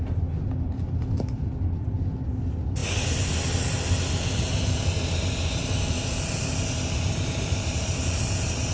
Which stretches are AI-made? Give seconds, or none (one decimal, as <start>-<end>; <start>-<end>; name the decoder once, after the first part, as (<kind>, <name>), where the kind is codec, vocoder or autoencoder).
none